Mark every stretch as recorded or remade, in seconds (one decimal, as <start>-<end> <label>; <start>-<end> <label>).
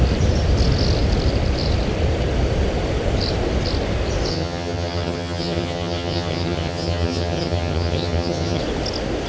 0.0-4.3 recorded; 4.3-8.6 remade; 8.6-9.3 recorded